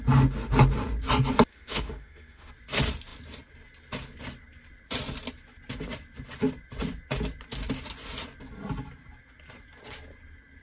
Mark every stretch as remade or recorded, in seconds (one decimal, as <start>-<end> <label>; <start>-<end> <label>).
0.0-1.5 recorded; 1.5-2.5 remade; 2.5-10.6 recorded